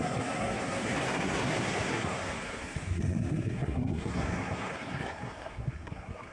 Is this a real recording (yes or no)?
no